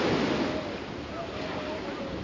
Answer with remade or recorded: recorded